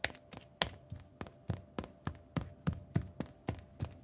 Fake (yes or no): no